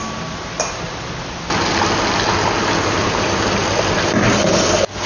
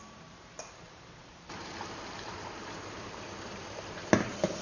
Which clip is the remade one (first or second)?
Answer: second